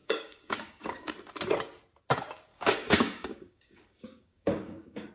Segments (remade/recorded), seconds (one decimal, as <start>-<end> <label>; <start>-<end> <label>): 0.0-1.1 remade; 1.1-2.5 recorded; 2.5-5.1 remade

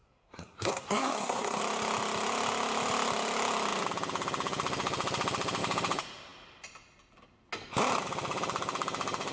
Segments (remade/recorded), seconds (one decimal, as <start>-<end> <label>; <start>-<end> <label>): 0.0-1.6 remade; 1.6-9.3 recorded

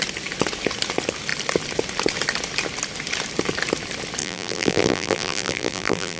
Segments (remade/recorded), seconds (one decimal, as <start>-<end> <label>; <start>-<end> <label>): 0.0-4.2 recorded; 4.2-6.2 remade

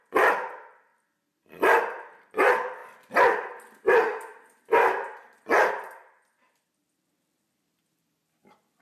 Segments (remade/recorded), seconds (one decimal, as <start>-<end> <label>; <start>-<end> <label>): 0.0-8.8 recorded

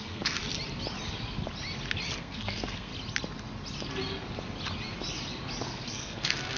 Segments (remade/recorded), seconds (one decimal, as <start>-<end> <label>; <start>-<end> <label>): 0.0-0.4 remade; 0.4-2.2 recorded; 2.2-2.9 remade; 2.9-5.6 recorded; 5.6-6.6 remade

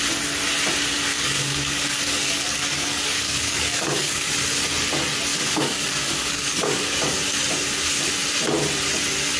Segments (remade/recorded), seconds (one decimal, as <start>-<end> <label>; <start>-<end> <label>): 0.0-1.1 recorded; 1.1-4.3 remade; 4.3-5.3 recorded; 5.3-7.0 remade; 7.0-9.4 recorded